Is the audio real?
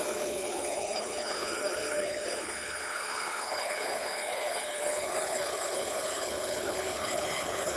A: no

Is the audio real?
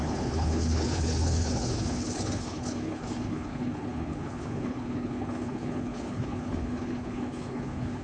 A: no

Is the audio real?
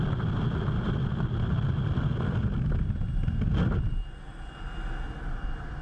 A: yes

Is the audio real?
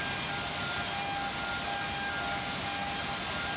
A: yes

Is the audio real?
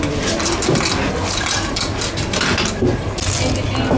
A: yes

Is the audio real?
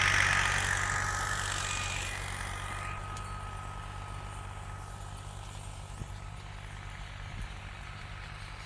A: yes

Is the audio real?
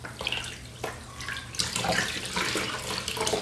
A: yes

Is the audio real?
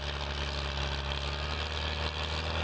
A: yes